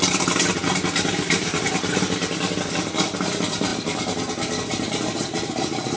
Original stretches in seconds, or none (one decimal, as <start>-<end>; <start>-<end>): 0.6-1.3; 3.7-6.0